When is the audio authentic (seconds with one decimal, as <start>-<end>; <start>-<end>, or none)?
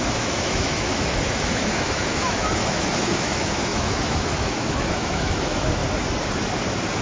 5.8-7.0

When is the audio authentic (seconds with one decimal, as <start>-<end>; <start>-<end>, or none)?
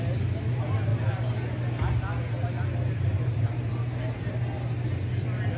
0.0-5.6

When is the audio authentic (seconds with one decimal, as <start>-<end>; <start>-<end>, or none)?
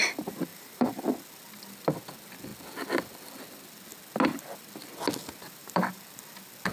0.0-0.5; 1.0-5.6; 6.2-6.7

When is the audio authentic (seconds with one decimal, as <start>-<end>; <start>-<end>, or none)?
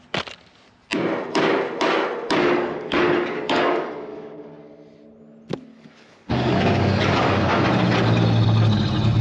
0.0-2.4; 4.5-5.7; 7.7-9.2